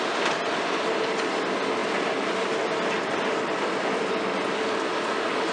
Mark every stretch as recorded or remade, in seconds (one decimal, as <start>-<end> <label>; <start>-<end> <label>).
0.0-5.5 recorded